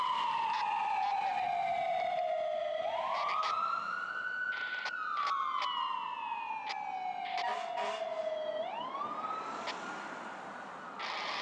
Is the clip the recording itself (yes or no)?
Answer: yes